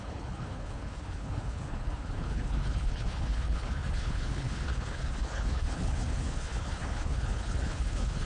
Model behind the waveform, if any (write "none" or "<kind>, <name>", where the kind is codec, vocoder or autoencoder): codec, HILCodec